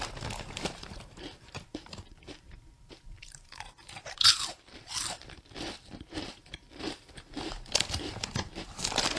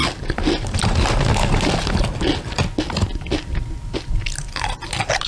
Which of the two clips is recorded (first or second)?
second